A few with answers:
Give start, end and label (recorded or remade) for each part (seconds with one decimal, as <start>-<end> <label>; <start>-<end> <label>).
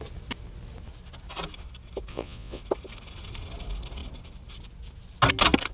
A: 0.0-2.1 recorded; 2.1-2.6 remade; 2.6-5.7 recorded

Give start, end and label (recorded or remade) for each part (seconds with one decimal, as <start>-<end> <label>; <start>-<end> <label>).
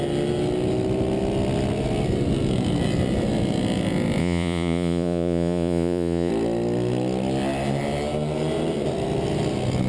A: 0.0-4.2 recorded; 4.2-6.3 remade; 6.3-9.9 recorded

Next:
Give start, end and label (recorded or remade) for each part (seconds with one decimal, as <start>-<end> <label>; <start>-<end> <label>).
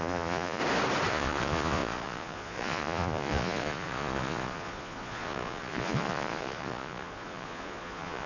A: 0.0-0.6 remade; 0.6-1.1 recorded; 1.1-8.3 remade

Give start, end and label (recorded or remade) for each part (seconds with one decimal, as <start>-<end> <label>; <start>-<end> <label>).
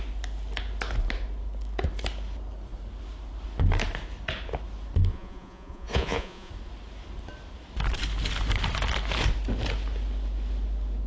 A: 0.0-5.1 recorded; 5.1-6.5 remade; 6.5-11.1 recorded